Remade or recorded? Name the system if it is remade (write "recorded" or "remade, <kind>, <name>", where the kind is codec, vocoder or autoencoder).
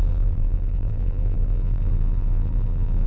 remade, vocoder, BigVGAN v2